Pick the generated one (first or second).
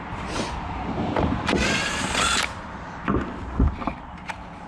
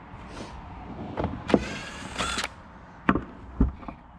first